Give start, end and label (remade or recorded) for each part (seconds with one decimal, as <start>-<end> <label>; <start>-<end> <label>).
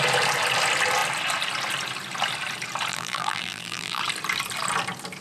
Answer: 0.0-2.9 recorded; 2.9-4.0 remade; 4.0-5.2 recorded